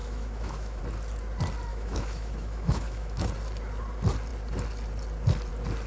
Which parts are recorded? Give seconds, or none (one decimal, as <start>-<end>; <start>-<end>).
0.8-1.7; 3.3-5.9